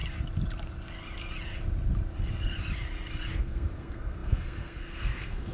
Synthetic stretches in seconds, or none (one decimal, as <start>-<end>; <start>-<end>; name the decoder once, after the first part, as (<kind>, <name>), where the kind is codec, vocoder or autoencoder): 3.3-5.5 (codec, SNAC)